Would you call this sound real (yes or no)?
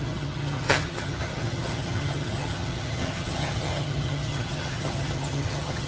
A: no